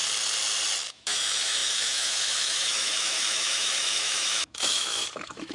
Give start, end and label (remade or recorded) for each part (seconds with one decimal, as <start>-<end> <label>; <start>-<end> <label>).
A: 0.0-0.9 recorded; 0.9-5.5 remade